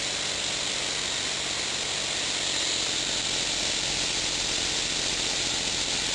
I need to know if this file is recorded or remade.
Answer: recorded